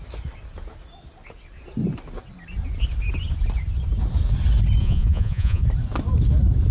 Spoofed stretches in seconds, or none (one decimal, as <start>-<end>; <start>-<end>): 4.8-5.6